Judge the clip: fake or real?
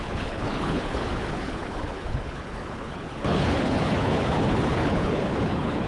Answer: fake